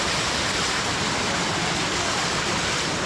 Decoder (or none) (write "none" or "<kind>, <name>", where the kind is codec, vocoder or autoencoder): none